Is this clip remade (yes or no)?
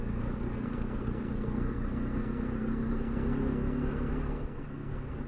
yes